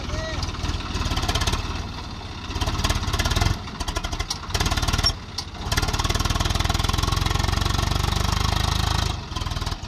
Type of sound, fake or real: real